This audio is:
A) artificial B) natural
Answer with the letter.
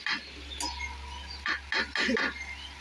B